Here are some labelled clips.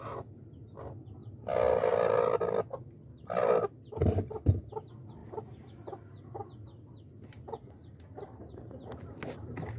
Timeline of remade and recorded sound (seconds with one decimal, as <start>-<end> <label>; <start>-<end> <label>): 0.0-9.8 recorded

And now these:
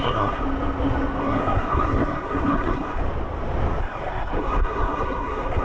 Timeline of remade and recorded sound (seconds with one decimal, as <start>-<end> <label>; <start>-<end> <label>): 0.0-0.4 remade; 0.4-1.2 recorded; 1.2-3.0 remade; 3.0-3.8 recorded; 3.8-5.6 remade

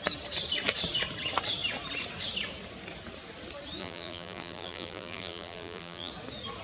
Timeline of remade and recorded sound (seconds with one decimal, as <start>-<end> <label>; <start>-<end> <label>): 0.0-3.8 recorded; 3.8-6.1 remade; 6.1-6.6 recorded

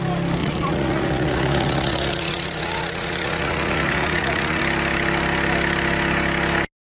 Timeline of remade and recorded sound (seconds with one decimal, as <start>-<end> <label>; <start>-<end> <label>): 0.0-0.4 recorded; 0.4-4.6 remade; 4.6-7.0 recorded